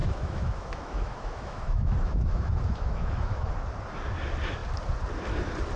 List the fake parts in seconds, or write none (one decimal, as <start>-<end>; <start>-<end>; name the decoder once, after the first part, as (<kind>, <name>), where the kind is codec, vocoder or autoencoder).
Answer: 0.0-3.5 (autoencoder, DAC-VAE)